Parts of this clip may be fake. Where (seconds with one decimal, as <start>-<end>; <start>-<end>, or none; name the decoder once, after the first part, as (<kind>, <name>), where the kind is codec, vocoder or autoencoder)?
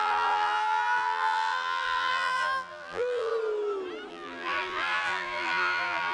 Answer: 0.0-3.3 (vocoder, BigVGAN v2); 4.1-6.1